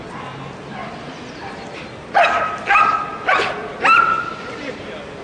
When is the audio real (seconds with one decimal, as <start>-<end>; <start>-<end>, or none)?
0.0-5.2